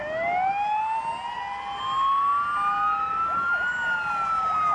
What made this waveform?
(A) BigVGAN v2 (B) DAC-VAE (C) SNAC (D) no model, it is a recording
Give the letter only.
D